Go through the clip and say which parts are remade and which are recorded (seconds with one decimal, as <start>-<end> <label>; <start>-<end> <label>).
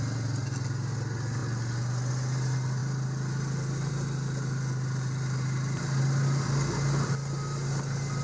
0.0-8.2 recorded